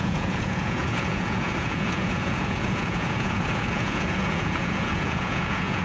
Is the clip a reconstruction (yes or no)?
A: yes